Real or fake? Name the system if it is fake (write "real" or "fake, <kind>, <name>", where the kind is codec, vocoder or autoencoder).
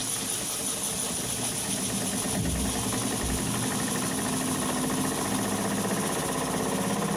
real